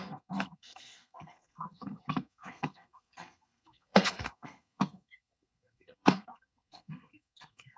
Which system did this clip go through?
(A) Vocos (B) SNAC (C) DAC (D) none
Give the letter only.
B